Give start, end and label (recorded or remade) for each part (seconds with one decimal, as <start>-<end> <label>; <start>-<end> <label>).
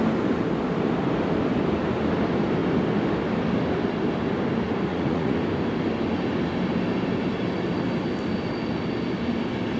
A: 0.0-4.9 recorded; 4.9-5.4 remade; 5.4-9.8 recorded